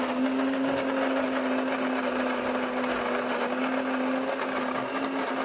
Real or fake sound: real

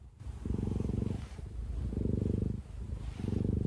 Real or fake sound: real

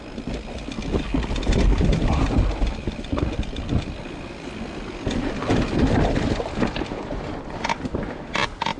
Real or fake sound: real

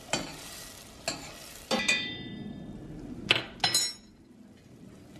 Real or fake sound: real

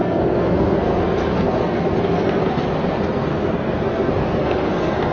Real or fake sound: fake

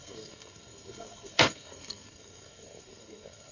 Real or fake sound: fake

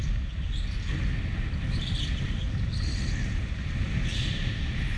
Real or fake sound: real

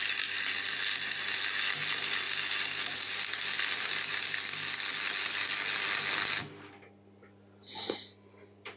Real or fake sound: real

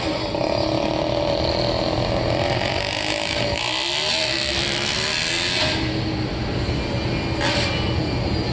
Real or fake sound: real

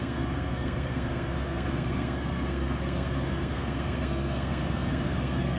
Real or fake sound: fake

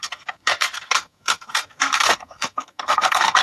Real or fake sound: fake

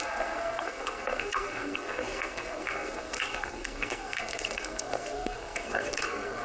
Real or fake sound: fake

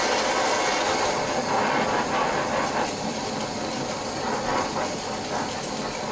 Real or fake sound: real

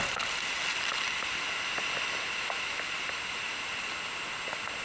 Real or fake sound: real